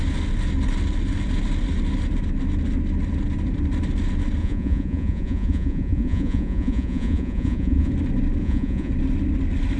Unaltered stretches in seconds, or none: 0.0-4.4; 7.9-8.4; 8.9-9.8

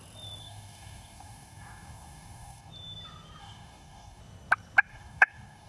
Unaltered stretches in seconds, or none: 0.0-0.4; 2.7-3.4; 4.2-4.9

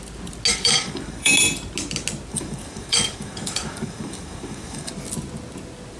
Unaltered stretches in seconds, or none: 0.0-0.5; 1.3-2.3; 4.9-6.0

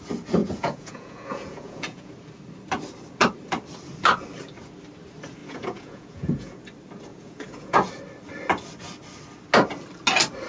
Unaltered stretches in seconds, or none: 0.0-0.4; 2.1-5.4; 6.6-7.1; 7.9-10.5